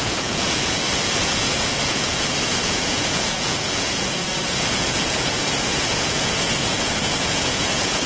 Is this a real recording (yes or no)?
no